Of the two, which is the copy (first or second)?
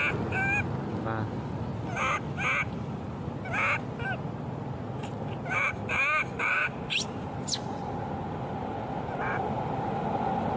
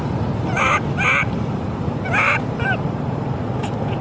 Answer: second